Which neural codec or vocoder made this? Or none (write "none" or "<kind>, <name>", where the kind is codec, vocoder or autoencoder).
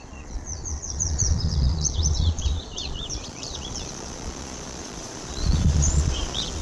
vocoder, Vocos